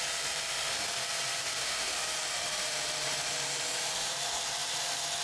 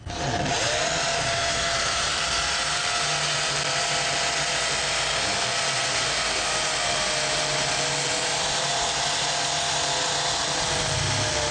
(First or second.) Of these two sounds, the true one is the second